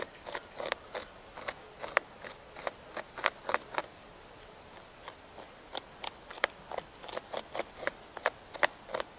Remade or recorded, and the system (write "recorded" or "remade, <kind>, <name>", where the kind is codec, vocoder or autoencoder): recorded